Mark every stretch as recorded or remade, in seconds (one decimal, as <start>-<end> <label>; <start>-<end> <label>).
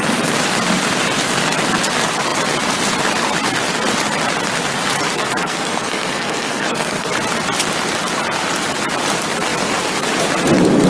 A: 0.0-5.4 recorded; 5.4-7.1 remade; 7.1-10.9 recorded